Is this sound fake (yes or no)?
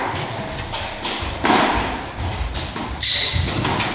no